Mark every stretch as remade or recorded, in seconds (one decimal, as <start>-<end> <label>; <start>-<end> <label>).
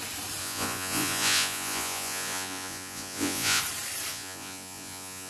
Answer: 0.0-0.4 recorded; 0.4-3.6 remade; 3.6-4.1 recorded; 4.1-5.3 remade